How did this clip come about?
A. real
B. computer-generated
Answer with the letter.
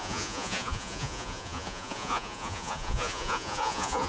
B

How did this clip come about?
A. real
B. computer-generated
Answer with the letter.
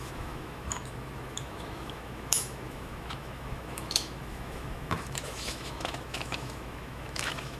B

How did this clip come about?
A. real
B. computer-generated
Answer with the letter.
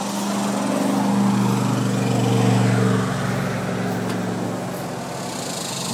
A